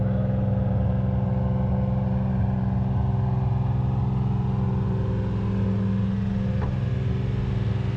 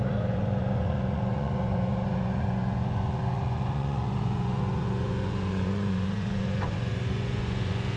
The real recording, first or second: first